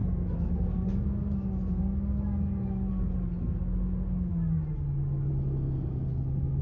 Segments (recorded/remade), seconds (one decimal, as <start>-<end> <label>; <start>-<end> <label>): 0.0-6.6 recorded